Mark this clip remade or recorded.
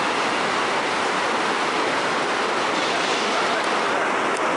recorded